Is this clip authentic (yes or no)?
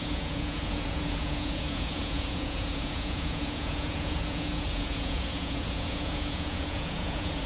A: no